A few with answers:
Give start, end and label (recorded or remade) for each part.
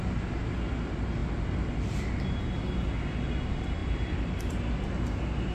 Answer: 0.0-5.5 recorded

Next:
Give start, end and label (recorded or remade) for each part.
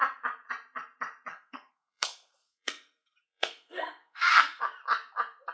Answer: 0.0-1.3 recorded; 1.3-4.6 remade; 4.6-5.5 recorded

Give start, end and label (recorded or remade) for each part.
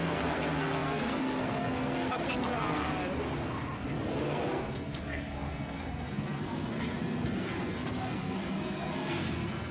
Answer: 0.0-2.9 remade; 2.9-4.2 recorded; 4.2-9.7 remade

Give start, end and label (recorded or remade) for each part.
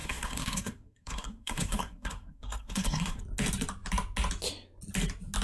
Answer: 0.0-3.2 remade; 3.2-5.4 recorded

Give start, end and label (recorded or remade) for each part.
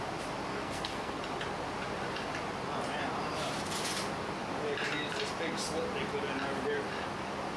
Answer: 0.0-0.5 recorded; 0.5-1.2 remade; 1.2-7.6 recorded